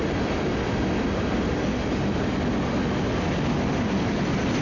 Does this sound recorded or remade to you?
recorded